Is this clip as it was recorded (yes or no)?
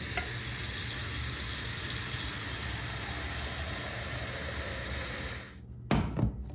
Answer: yes